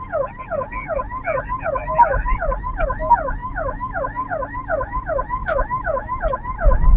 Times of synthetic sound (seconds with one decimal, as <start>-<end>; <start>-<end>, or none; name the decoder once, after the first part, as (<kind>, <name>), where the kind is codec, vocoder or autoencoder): 3.4-4.0 (autoencoder, DAC-VAE); 5.4-6.2